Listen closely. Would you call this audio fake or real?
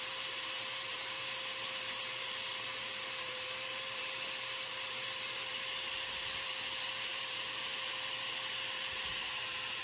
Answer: fake